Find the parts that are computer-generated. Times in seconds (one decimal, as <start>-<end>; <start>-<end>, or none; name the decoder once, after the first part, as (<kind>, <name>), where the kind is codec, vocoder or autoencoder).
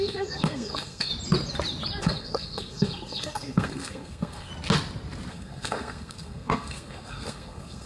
0.0-1.1 (codec, SNAC); 2.0-4.5; 5.3-7.9